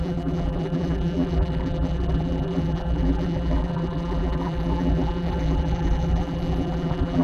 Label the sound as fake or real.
fake